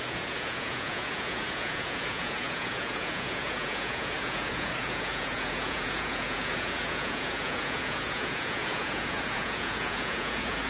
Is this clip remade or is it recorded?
remade